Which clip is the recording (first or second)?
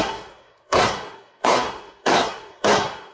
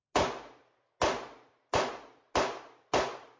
second